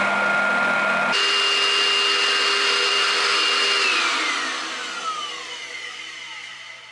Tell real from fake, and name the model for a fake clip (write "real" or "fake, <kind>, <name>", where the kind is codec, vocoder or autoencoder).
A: real